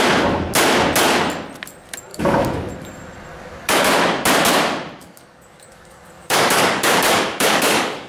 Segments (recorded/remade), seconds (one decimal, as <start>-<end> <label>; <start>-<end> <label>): 0.0-2.1 recorded; 2.1-2.7 remade; 2.7-3.3 recorded; 3.3-4.0 remade; 4.0-5.0 recorded; 5.0-8.1 remade